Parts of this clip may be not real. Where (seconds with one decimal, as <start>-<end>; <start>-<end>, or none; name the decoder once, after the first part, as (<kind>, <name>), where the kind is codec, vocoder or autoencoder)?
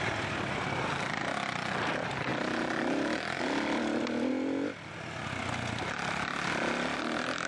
none